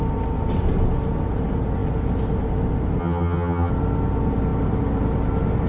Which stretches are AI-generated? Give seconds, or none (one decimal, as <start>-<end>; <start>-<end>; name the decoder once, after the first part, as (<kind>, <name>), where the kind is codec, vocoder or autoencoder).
3.0-3.7 (vocoder, HiFi-GAN)